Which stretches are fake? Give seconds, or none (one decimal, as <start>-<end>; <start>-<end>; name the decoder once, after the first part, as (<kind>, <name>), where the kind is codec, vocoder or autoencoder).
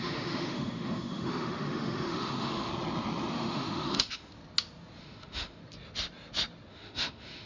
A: 0.0-2.7 (autoencoder, DAC-VAE); 3.3-4.3; 5.0-5.6; 6.7-7.5